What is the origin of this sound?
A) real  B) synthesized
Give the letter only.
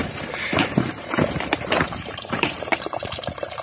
B